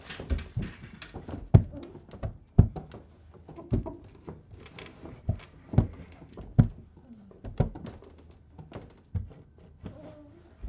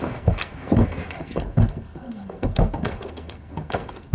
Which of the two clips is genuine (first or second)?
first